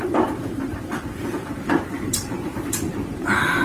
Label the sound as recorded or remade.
remade